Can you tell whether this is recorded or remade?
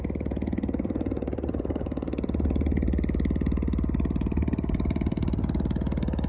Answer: recorded